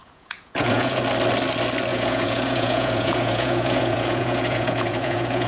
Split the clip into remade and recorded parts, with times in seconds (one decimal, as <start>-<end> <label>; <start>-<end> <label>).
0.0-1.0 remade; 1.0-1.9 recorded; 1.9-5.5 remade